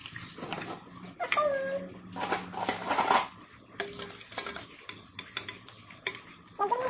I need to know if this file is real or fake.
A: real